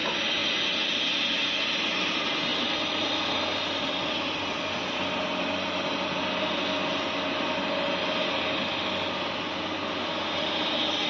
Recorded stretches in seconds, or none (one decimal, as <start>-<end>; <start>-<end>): 0.0-2.5; 4.6-11.1

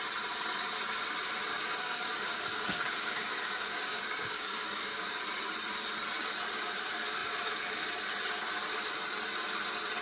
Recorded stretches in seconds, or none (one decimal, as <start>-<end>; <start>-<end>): 0.0-1.5; 5.2-10.0

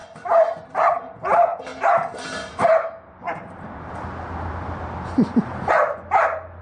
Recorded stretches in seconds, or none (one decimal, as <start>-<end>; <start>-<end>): 0.0-6.6